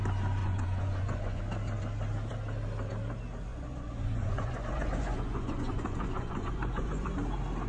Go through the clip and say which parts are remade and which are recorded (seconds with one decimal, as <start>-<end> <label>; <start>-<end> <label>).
0.0-0.4 recorded; 0.4-1.4 remade; 1.4-3.5 recorded; 3.5-7.1 remade; 7.1-7.7 recorded